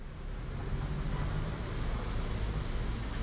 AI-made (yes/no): no